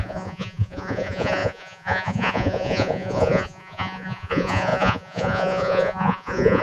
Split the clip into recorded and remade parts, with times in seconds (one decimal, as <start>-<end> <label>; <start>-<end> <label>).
0.0-6.6 remade